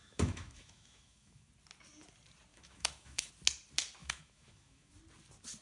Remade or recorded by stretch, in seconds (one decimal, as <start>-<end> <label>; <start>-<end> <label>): 0.0-1.5 remade; 1.5-2.5 recorded; 2.5-3.3 remade; 3.3-4.0 recorded; 4.0-4.9 remade; 4.9-5.6 recorded